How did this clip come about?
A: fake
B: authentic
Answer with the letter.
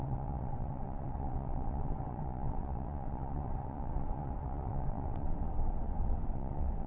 A